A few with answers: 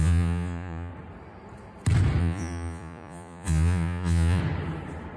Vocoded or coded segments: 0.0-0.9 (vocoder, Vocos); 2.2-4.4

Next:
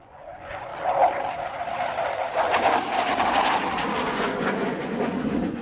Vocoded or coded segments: 0.0-0.7 (vocoder, Vocos); 4.1-5.6

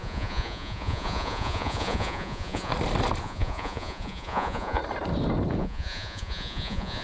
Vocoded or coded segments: 0.0-2.7 (vocoder, Vocos); 3.2-4.8; 5.6-7.0

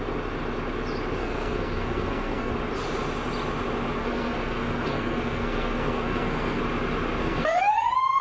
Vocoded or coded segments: 1.2-2.5 (codec, SNAC); 4.0-6.6; 7.2-8.2

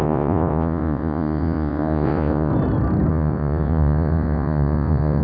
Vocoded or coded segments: 0.0-2.5 (vocoder, Vocos); 3.1-5.2

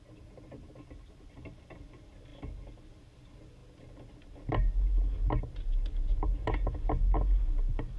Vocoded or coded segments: none

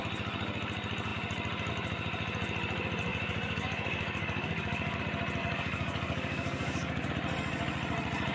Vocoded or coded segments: 3.1-5.0 (codec, DAC); 5.4-7.1

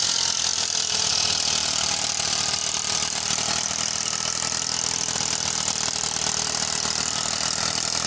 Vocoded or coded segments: 0.5-1.1 (vocoder, BigVGAN v2); 1.6-3.8